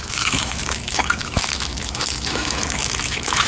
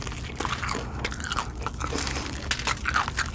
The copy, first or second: first